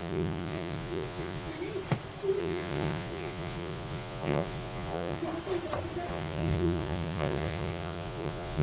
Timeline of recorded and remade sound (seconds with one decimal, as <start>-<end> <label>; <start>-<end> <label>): 0.0-1.5 remade; 1.5-2.4 recorded; 2.4-5.2 remade; 5.2-6.1 recorded; 6.1-8.6 remade